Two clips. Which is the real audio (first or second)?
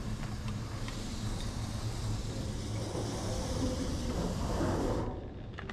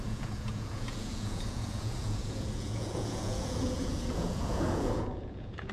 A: first